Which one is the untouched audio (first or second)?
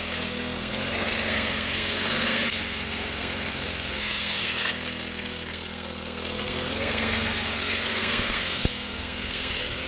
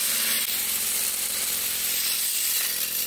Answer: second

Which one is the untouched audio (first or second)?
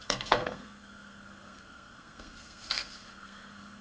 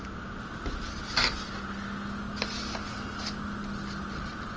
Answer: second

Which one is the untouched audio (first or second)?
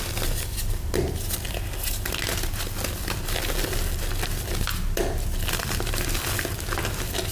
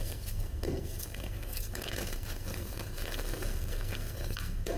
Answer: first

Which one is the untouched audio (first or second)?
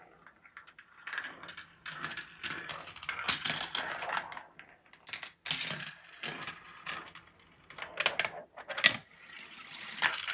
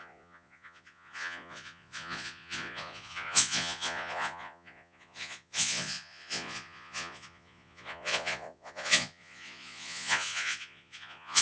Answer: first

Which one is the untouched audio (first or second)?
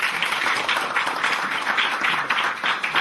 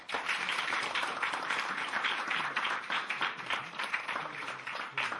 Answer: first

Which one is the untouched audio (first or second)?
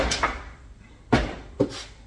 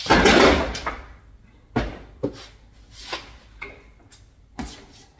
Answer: second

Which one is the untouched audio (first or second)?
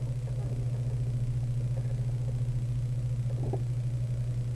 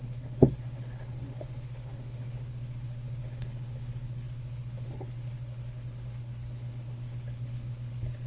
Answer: first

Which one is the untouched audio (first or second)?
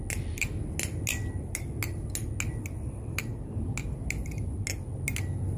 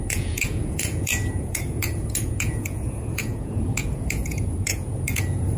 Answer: first